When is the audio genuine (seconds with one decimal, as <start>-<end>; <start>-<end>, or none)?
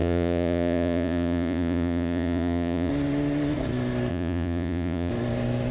2.9-4.1; 5.1-5.7